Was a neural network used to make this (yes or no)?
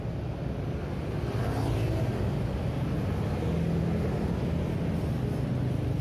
no